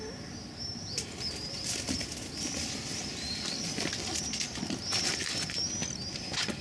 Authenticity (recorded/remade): recorded